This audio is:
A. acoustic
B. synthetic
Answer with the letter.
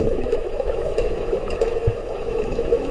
B